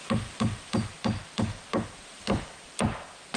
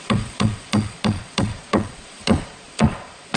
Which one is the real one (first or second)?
first